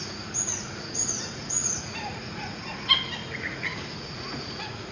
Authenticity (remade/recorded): remade